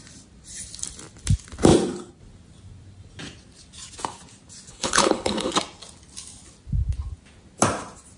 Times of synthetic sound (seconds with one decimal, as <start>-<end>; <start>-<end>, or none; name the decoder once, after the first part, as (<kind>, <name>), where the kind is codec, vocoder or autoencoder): 4.7-5.5 (codec, HILCodec)